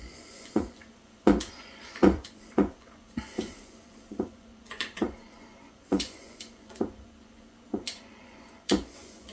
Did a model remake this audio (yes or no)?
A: yes